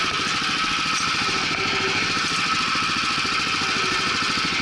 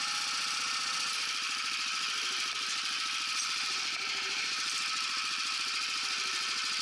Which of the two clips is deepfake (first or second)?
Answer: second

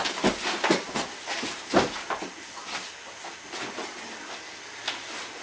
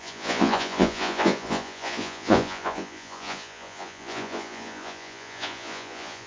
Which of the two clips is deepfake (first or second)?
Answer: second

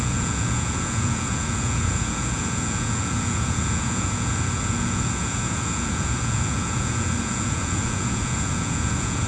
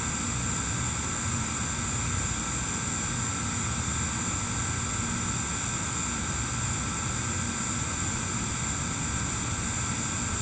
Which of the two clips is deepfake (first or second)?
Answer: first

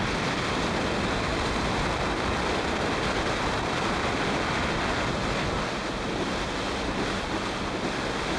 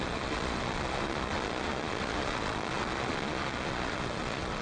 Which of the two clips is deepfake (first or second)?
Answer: second